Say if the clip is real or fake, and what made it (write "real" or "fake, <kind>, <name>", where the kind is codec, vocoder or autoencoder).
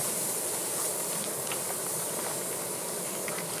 real